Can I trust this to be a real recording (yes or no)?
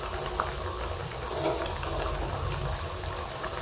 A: yes